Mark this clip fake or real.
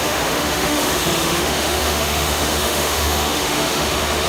fake